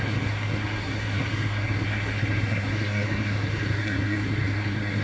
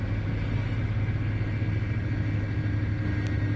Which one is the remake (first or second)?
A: first